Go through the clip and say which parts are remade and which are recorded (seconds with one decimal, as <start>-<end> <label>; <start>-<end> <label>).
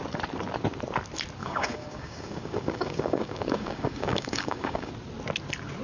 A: 0.0-1.4 recorded; 1.4-4.9 remade; 4.9-5.8 recorded